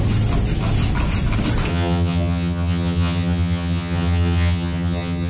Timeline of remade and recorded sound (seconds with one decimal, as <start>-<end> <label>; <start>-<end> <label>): 0.0-1.7 recorded; 1.7-5.3 remade